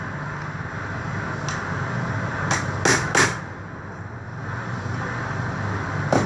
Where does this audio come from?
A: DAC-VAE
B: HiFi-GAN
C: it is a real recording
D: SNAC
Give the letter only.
C